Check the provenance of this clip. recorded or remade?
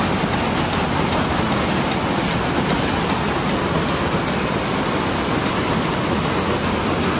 recorded